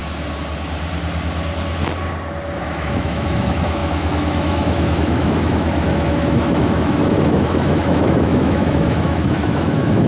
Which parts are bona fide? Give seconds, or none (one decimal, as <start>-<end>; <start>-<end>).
0.0-2.6